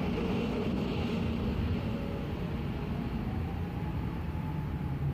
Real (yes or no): yes